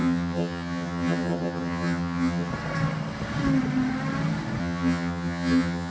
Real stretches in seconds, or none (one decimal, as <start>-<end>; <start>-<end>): 2.5-4.6